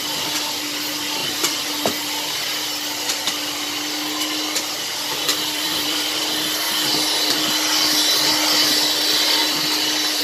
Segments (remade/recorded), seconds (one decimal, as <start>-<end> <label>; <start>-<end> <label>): 0.0-1.2 recorded; 1.2-1.7 remade; 1.7-5.3 recorded; 5.3-6.2 remade; 6.2-10.2 recorded